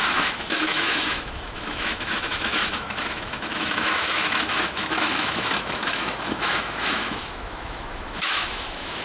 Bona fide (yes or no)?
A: no